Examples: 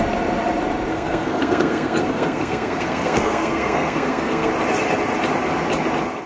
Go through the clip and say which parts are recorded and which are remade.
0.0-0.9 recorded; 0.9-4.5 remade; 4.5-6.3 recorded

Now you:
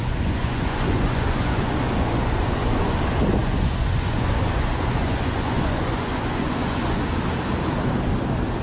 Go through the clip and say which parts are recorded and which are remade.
0.0-3.0 remade; 3.0-3.4 recorded; 3.4-7.0 remade; 7.0-8.6 recorded

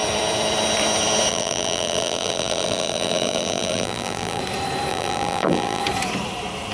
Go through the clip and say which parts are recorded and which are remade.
0.0-1.3 recorded; 1.3-4.4 remade; 4.4-4.9 recorded; 4.9-5.8 remade; 5.8-6.7 recorded